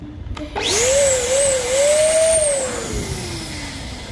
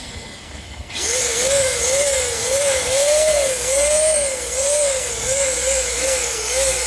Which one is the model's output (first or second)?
second